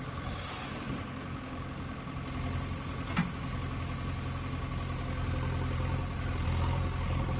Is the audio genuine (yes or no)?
yes